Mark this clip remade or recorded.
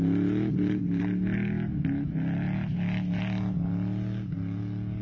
recorded